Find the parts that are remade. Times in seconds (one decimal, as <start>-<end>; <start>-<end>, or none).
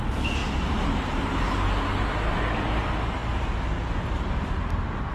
0.4-1.2